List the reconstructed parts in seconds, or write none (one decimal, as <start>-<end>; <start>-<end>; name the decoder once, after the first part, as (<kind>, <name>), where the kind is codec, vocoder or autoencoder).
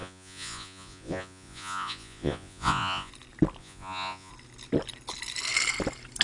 0.0-3.1 (vocoder, Vocos); 3.6-4.3